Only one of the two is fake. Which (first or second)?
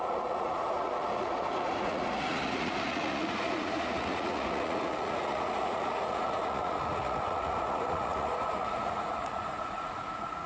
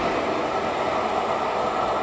first